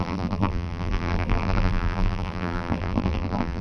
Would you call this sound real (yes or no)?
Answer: no